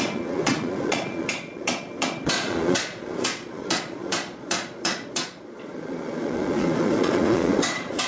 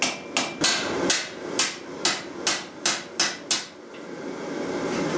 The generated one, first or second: first